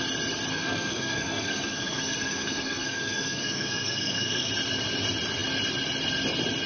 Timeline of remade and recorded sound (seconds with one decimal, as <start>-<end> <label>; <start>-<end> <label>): 0.0-0.5 recorded; 0.5-4.5 remade; 4.5-6.7 recorded